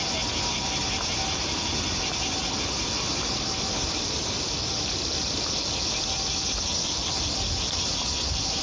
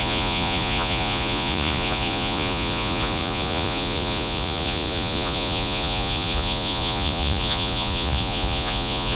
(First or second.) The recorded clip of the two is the first